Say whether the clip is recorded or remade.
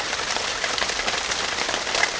recorded